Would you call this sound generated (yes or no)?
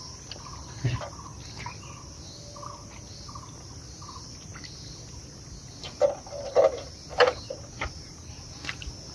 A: no